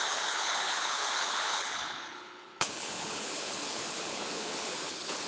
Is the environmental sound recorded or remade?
remade